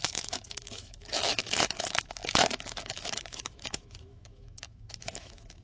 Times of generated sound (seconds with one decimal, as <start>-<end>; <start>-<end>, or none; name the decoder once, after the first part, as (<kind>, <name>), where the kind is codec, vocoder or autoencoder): 0.0-5.6 (autoencoder, DAC-VAE)